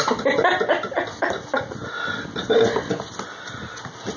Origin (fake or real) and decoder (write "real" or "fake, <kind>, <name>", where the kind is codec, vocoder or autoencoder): real